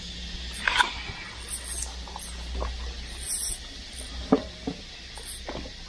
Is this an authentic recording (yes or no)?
yes